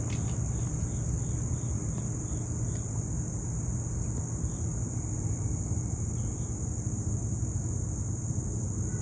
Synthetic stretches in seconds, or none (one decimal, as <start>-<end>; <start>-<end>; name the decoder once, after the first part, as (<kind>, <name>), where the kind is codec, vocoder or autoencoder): none